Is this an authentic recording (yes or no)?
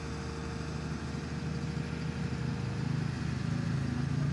yes